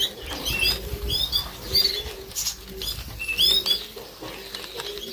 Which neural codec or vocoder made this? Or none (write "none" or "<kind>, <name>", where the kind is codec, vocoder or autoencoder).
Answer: none